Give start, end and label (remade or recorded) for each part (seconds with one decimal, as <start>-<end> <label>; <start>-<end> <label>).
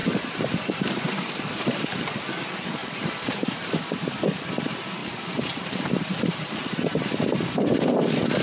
0.0-1.8 remade; 1.8-2.8 recorded; 2.8-4.2 remade; 4.2-5.0 recorded; 5.0-6.6 remade; 6.6-8.4 recorded